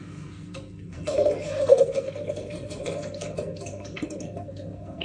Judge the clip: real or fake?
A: fake